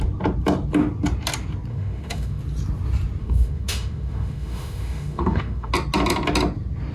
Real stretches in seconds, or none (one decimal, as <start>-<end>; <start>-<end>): 0.0-1.7; 2.4-3.2; 5.7-6.9

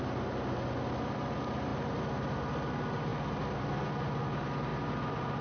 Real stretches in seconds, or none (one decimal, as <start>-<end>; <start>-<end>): 0.0-5.4